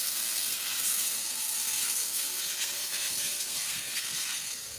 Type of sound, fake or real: fake